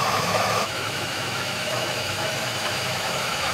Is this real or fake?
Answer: fake